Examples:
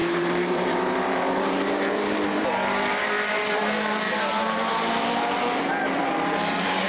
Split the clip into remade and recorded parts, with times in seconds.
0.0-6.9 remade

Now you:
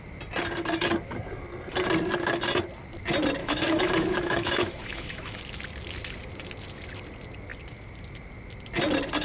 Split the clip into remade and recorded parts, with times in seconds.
0.0-3.4 recorded; 3.4-5.4 remade; 5.4-9.2 recorded

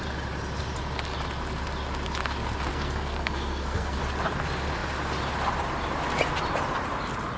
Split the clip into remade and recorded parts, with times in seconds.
0.0-2.7 recorded; 2.7-4.0 remade; 4.0-7.4 recorded

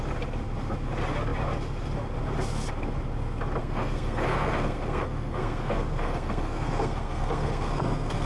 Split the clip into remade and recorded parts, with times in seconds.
0.0-3.6 recorded; 3.6-8.3 remade

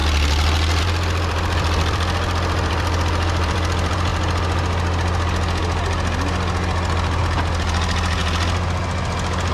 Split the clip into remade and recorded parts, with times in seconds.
0.0-0.8 recorded; 0.8-4.1 remade; 4.1-7.2 recorded; 7.2-8.2 remade; 8.2-9.5 recorded

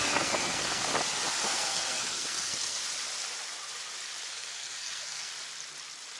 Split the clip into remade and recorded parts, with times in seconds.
0.0-0.9 remade; 0.9-1.4 recorded; 1.4-2.8 remade; 2.8-4.3 recorded; 4.3-5.3 remade; 5.3-6.2 recorded